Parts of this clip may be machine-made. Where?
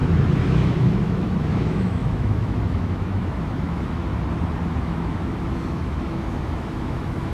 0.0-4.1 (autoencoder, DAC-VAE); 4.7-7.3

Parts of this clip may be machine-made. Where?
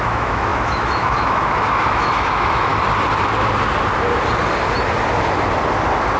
0.0-2.7 (autoencoder, DAC-VAE)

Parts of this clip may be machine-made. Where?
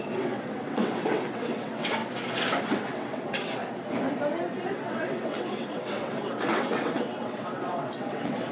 0.0-2.0 (vocoder, WaveNeXt); 2.6-3.6; 4.6-8.5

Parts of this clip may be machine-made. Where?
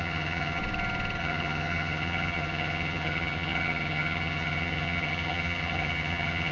0.0-0.6 (vocoder, HiFi-GAN); 1.2-6.5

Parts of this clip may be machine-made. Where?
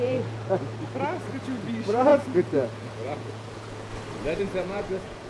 0.0-0.7 (vocoder, Vocos); 1.3-3.9; 4.4-5.3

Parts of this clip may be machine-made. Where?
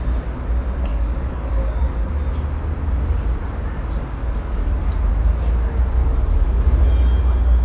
0.9-2.1 (codec, DAC); 4.2-4.9; 6.0-6.6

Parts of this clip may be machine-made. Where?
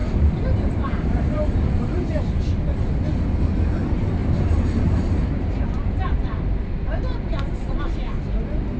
0.0-2.2 (vocoder, BigVGAN v2); 4.2-6.0